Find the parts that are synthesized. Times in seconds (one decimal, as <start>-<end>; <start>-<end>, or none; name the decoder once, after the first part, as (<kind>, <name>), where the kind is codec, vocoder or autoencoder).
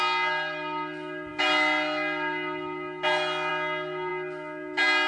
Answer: none